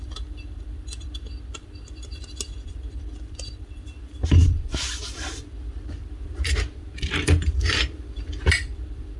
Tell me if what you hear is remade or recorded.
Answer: remade